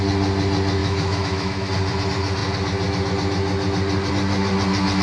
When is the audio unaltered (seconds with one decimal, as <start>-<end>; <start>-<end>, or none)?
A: 0.0-0.8; 1.7-5.0